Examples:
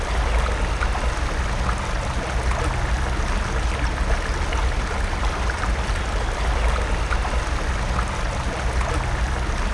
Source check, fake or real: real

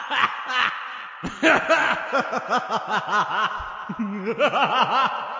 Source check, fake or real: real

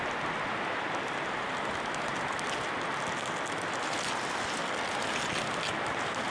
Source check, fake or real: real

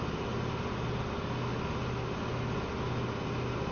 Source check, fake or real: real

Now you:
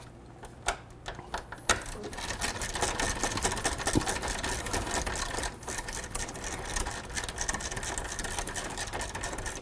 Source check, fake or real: real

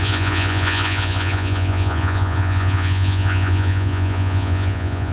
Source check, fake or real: fake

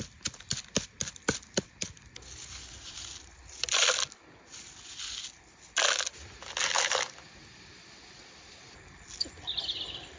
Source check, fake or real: real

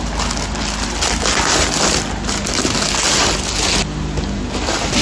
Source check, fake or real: real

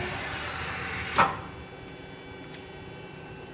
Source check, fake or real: real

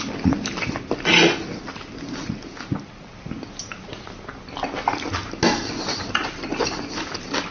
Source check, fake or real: real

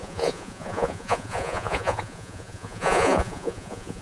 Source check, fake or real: fake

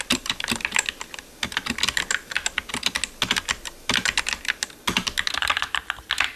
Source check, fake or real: real